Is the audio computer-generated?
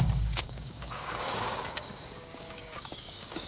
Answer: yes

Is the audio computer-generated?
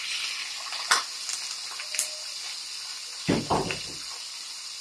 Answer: no